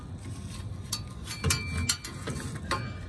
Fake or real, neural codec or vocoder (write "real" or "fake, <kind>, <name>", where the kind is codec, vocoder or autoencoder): real